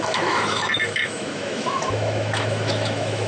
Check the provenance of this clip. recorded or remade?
remade